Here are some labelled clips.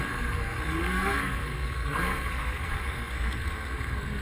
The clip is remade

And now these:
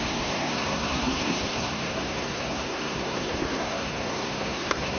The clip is remade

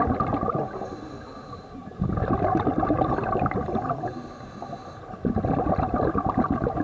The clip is recorded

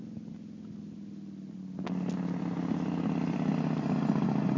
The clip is recorded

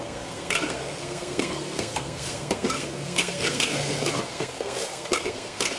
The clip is remade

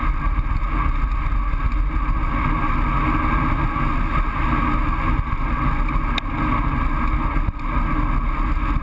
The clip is recorded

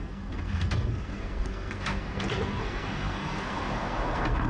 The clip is remade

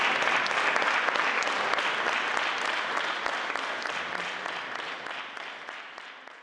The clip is recorded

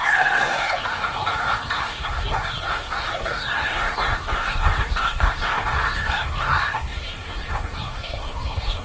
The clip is remade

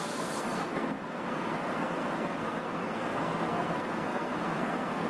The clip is remade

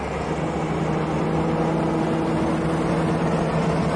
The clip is recorded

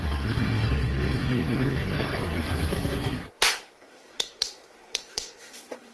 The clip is remade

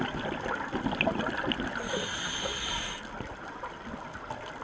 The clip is recorded